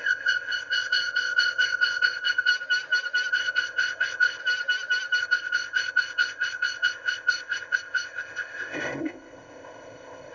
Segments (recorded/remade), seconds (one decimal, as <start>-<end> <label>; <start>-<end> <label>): 0.0-2.5 remade; 2.5-3.3 recorded; 3.3-4.4 remade; 4.4-5.2 recorded; 5.2-10.3 remade